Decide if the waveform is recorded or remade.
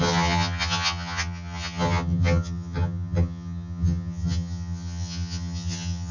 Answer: remade